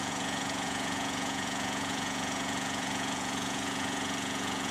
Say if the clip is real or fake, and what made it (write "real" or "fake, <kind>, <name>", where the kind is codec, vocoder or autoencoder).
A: fake, vocoder, Vocos